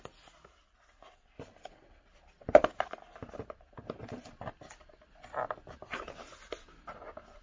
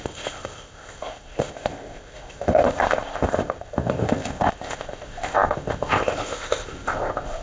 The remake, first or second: second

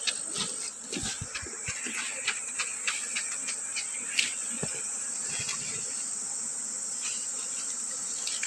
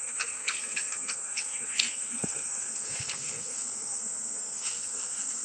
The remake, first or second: second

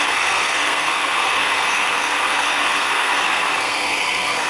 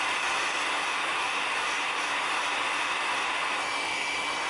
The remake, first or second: first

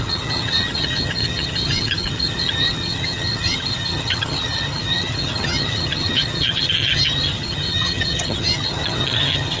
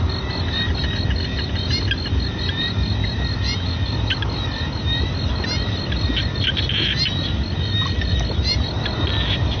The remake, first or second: first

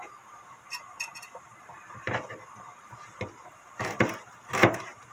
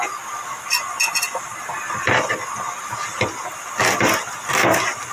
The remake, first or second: first